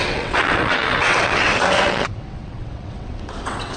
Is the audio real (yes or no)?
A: no